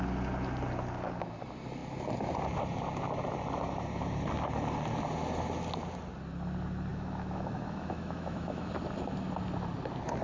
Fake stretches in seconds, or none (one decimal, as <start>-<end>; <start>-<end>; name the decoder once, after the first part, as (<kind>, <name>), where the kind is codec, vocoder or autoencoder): 6.9-8.7 (autoencoder, DAC-VAE)